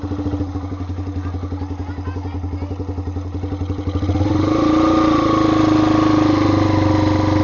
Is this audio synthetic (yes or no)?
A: no